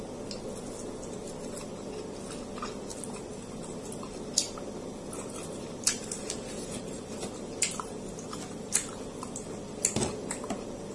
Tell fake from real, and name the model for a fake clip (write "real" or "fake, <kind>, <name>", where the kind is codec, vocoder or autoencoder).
real